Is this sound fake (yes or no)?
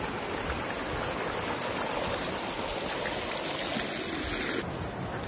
no